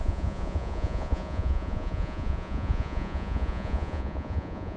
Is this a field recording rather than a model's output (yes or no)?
no